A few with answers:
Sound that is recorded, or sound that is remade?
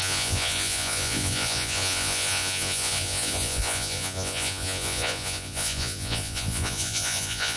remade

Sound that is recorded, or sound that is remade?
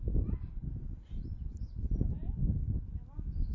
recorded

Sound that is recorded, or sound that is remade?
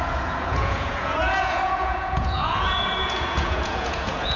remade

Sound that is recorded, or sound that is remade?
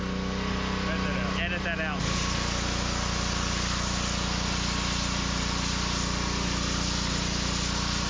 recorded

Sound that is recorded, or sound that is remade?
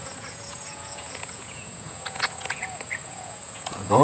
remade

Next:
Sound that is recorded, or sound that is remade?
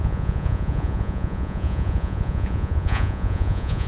remade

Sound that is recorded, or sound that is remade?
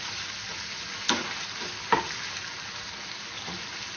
recorded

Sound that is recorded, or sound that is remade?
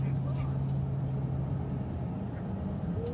recorded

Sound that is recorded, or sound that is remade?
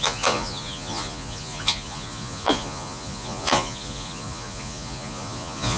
remade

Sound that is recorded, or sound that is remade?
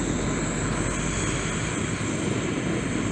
recorded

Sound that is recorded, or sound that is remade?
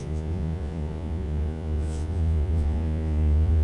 remade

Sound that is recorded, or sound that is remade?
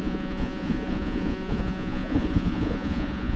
remade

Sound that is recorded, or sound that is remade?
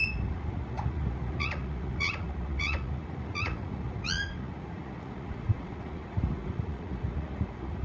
remade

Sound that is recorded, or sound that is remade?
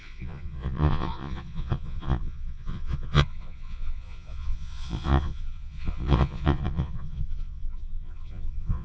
remade